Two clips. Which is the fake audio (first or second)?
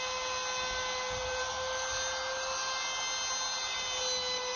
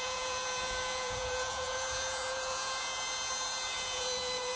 second